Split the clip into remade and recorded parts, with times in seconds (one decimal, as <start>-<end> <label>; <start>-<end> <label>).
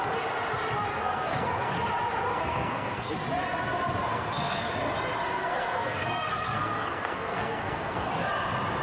0.0-0.9 recorded; 0.9-1.7 remade; 1.7-2.3 recorded; 2.3-3.1 remade; 3.1-4.1 recorded; 4.1-4.7 remade; 4.7-5.4 recorded; 5.4-8.1 remade; 8.1-8.8 recorded